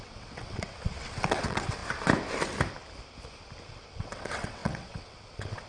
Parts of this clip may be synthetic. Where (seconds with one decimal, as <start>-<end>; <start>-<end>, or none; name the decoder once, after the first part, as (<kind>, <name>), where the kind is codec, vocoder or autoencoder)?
0.0-1.8 (vocoder, WaveNeXt); 3.7-5.7